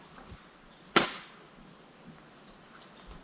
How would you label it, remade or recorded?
recorded